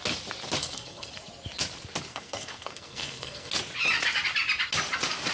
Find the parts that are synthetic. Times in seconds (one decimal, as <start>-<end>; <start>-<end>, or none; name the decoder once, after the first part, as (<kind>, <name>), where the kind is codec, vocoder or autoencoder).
0.6-1.1 (codec, SNAC); 2.1-3.5